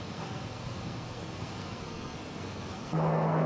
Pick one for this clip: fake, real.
fake